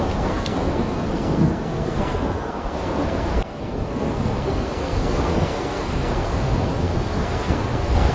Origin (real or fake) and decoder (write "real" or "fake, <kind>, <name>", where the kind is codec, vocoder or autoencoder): fake, codec, SNAC